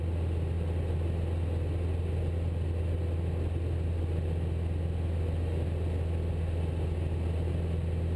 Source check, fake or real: real